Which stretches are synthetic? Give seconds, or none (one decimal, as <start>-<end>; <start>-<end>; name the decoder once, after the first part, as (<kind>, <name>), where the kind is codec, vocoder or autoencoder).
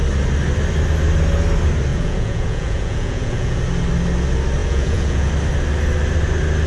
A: 1.9-3.6 (vocoder, Vocos); 4.6-5.3